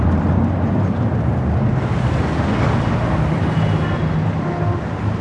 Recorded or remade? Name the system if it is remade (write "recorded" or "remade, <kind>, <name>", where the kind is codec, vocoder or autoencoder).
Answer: recorded